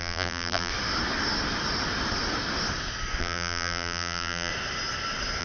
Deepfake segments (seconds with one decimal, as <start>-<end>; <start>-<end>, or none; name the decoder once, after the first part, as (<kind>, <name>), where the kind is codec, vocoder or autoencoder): 0.0-0.7 (vocoder, BigVGAN v2); 3.2-4.5